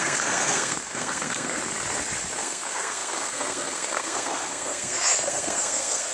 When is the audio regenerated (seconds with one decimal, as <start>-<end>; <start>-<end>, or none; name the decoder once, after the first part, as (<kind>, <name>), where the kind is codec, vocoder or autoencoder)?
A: 0.0-1.6 (codec, SNAC); 2.4-6.1